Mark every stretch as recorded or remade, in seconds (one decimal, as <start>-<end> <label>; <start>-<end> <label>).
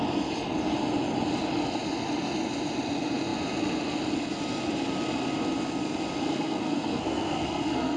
0.0-6.2 recorded; 6.2-8.0 remade